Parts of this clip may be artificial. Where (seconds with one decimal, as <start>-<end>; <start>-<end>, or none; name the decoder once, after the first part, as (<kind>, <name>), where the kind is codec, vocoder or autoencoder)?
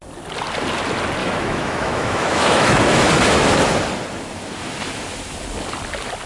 1.2-3.0 (autoencoder, DAC-VAE)